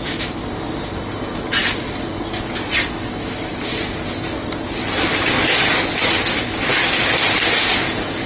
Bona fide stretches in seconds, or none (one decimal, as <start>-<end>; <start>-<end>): 0.0-8.3

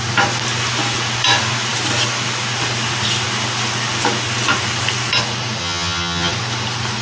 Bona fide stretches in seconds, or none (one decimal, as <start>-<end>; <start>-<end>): 0.0-5.6; 6.3-7.0

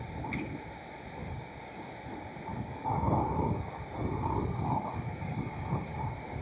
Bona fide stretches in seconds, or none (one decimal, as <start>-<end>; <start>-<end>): 0.0-1.2; 1.9-2.5

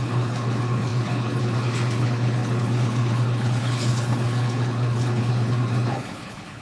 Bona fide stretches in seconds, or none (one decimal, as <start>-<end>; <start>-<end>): none

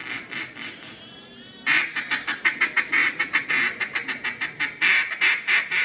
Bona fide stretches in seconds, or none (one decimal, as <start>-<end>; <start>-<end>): 0.0-5.8

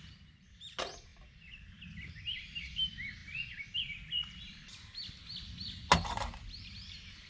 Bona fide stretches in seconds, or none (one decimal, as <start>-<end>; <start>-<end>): 0.0-7.3